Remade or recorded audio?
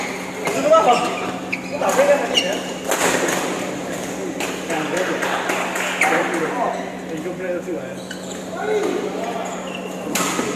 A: recorded